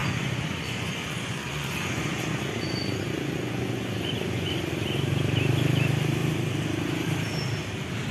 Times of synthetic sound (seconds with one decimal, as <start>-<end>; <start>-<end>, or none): 0.0-4.6

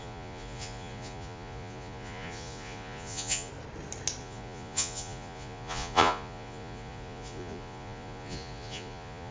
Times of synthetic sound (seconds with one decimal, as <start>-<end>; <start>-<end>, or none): 0.0-3.5; 4.2-9.3

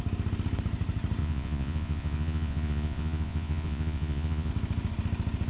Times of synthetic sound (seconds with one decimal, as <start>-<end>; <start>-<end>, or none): 1.2-4.5